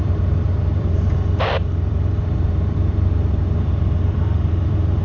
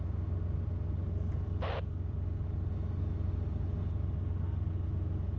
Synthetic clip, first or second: first